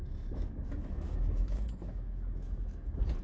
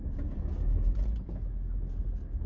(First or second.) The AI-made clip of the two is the first